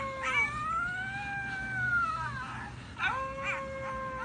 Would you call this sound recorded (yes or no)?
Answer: yes